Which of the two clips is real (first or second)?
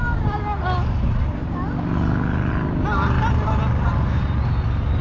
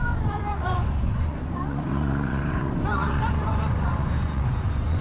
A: first